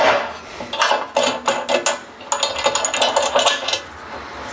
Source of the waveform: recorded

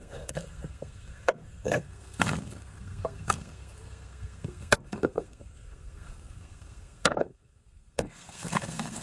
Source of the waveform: remade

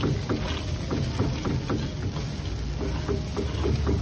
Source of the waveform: recorded